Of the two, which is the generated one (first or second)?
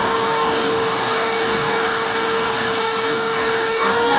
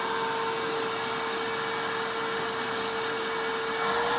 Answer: first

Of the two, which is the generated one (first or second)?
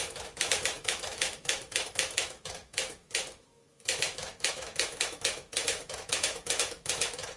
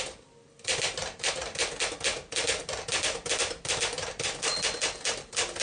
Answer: first